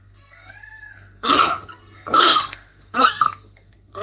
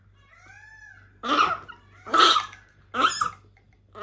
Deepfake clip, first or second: first